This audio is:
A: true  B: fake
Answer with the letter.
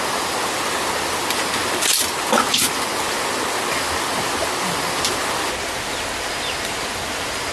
A